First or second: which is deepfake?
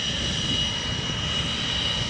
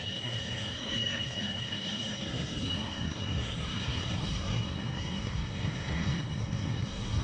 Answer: second